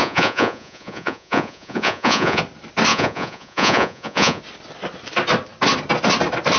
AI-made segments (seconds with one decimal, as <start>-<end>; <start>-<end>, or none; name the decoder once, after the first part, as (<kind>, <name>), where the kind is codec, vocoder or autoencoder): 0.0-2.4 (vocoder, Vocos); 2.9-4.4